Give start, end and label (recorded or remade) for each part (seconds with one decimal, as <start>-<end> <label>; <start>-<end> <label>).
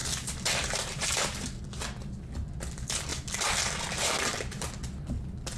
0.0-1.6 remade; 1.6-3.1 recorded; 3.1-4.7 remade; 4.7-5.6 recorded